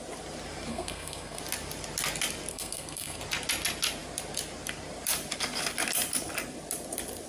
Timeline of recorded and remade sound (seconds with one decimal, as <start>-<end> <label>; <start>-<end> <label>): 0.0-0.7 recorded; 0.7-1.4 remade; 1.4-2.5 recorded; 2.5-3.2 remade; 3.2-7.3 recorded